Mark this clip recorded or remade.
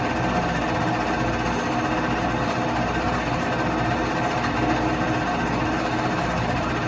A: recorded